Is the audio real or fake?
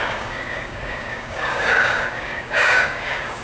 fake